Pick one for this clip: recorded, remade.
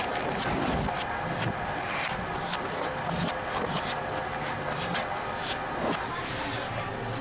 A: recorded